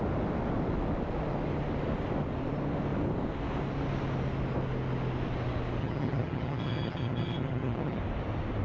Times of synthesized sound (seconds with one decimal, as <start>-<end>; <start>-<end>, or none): 5.8-8.0